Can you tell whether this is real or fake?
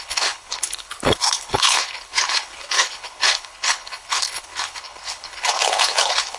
fake